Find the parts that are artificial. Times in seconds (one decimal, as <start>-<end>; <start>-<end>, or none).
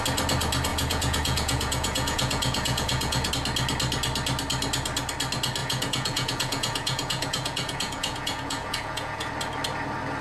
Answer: 0.7-3.3; 5.6-9.3